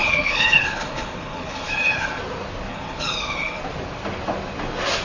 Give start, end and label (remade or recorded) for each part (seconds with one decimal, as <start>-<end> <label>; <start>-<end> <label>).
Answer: 0.0-2.2 remade; 2.2-2.7 recorded; 2.7-3.6 remade; 3.6-5.0 recorded